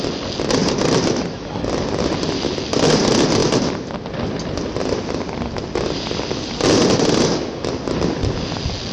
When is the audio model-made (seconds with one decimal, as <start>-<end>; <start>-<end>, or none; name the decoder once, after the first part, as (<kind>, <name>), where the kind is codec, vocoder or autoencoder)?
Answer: none